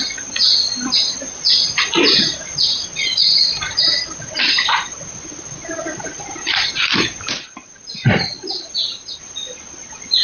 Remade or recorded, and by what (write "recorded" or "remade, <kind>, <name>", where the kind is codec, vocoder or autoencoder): recorded